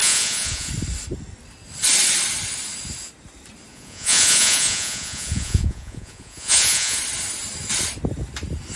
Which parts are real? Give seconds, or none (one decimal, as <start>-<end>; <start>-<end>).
0.7-3.7; 7.0-8.8